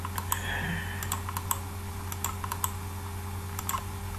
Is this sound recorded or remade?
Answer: recorded